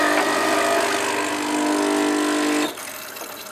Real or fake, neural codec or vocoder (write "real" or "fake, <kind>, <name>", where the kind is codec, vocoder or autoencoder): real